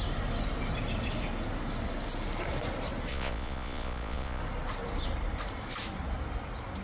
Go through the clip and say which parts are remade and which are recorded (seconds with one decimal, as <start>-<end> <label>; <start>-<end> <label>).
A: 0.0-3.1 recorded; 3.1-4.4 remade; 4.4-6.8 recorded